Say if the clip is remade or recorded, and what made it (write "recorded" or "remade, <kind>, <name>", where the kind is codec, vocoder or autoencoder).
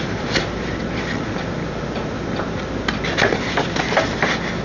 recorded